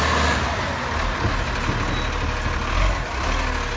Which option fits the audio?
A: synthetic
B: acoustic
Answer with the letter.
B